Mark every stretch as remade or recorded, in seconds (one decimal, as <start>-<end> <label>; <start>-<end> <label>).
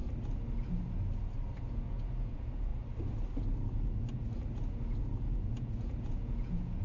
0.0-1.6 recorded; 1.6-2.7 remade; 2.7-5.0 recorded; 5.0-6.8 remade